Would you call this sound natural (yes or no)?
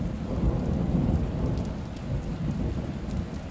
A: yes